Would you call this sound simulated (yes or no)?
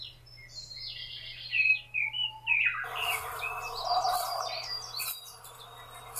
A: no